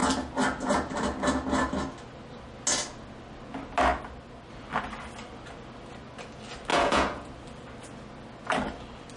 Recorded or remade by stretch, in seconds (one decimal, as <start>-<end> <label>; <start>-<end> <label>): 0.0-6.7 recorded; 6.7-7.3 remade; 7.3-9.2 recorded